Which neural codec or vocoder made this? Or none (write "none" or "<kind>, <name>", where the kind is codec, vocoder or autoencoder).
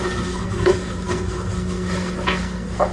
codec, SNAC